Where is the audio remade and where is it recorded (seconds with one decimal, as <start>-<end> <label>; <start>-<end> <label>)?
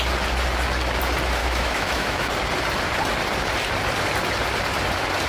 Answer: 0.0-1.4 recorded; 1.4-2.3 remade; 2.3-5.3 recorded